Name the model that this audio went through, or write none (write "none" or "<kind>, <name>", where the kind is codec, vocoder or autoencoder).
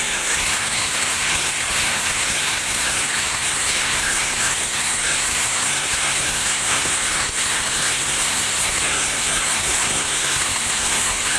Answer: codec, SNAC